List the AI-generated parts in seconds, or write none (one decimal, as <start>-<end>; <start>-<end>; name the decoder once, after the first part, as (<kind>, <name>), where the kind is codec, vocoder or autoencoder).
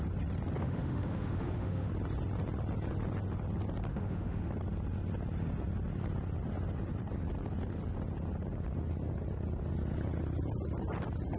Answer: 0.6-1.9 (autoencoder, DAC-VAE); 3.9-4.5